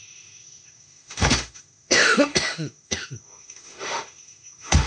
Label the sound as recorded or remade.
remade